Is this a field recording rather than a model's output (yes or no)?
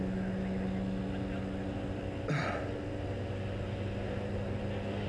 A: yes